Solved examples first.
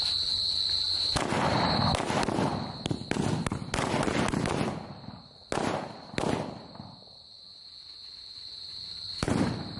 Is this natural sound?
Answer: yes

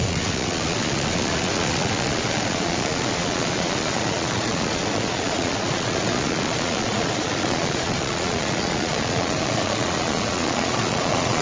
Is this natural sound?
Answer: no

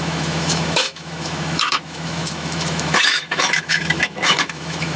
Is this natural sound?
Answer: no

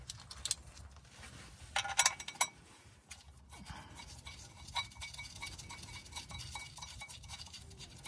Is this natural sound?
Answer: yes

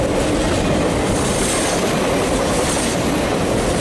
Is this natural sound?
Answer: yes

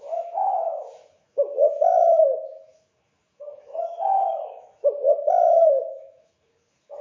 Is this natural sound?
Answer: no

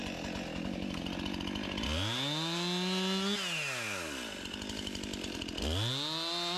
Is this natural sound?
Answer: yes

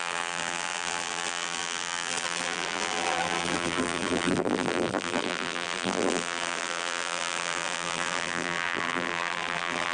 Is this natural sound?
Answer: no